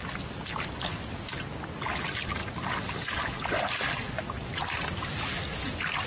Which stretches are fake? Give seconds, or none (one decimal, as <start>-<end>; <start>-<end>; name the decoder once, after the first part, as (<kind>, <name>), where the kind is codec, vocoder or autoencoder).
none